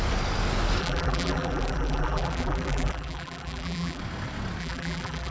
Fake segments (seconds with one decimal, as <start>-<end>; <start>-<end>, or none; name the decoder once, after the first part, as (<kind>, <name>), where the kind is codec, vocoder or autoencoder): 0.8-4.0 (vocoder, BigVGAN v2); 4.6-5.3